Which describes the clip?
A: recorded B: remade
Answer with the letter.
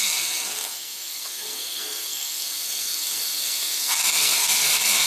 B